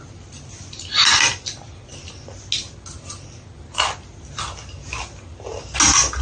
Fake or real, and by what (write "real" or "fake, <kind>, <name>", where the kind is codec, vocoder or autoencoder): real